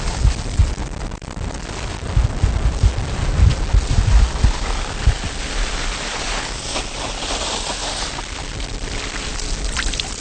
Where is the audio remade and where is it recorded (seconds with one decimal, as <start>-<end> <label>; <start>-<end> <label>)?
0.0-10.2 recorded